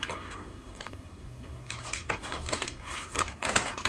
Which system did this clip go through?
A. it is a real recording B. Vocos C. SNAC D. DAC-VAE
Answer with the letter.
C